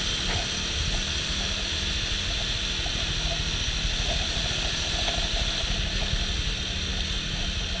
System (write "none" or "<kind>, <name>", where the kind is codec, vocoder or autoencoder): none